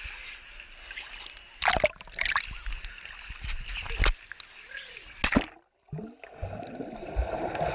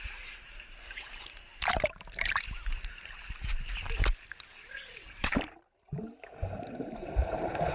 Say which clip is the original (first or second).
first